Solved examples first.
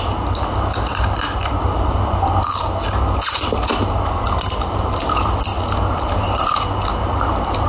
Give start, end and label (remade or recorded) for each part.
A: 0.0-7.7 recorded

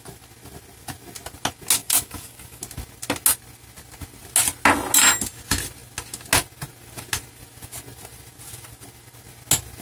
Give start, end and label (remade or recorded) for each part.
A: 0.0-1.8 recorded; 1.8-2.6 remade; 2.6-9.8 recorded

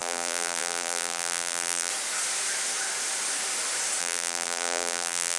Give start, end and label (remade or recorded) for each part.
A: 0.0-1.9 remade; 1.9-4.0 recorded; 4.0-5.4 remade

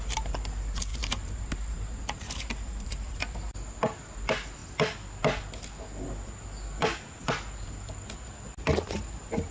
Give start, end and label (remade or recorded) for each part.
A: 0.0-0.9 recorded; 0.9-3.1 remade; 3.1-9.5 recorded